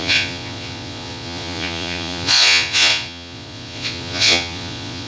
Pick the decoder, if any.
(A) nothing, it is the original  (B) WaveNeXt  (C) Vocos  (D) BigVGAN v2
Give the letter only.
C